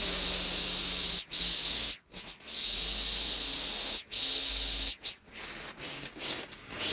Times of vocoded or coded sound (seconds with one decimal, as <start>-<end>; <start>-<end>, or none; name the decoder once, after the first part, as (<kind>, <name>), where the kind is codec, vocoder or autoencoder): 5.9-6.9 (codec, DAC)